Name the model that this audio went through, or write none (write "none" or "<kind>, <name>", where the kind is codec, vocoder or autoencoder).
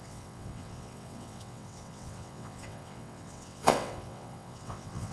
vocoder, WaveNeXt